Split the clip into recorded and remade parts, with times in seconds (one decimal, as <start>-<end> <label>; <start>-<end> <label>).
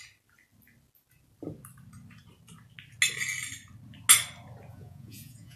0.0-4.7 recorded; 4.7-5.6 remade